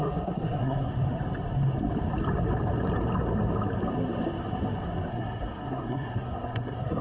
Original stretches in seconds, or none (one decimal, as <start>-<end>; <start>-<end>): 0.9-5.1